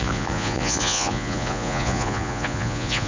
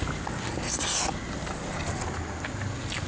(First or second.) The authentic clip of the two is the second